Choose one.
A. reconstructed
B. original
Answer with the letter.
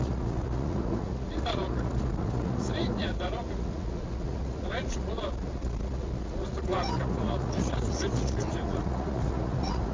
A